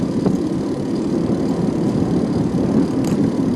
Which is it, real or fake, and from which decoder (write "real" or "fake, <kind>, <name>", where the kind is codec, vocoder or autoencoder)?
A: real